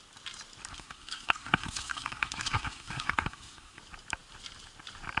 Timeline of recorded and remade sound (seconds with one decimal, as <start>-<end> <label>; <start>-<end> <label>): 0.0-0.7 recorded; 0.7-3.8 remade; 3.8-5.2 recorded